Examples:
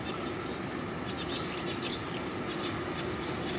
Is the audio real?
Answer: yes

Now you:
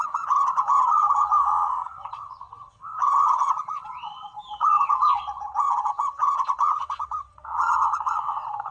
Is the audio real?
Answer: no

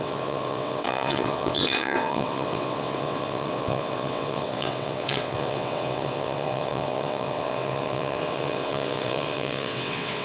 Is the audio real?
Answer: no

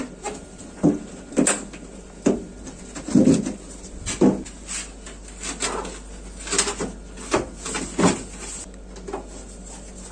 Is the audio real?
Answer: yes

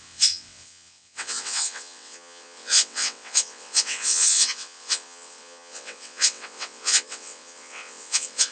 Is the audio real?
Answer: no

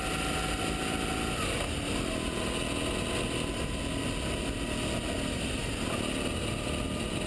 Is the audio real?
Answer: yes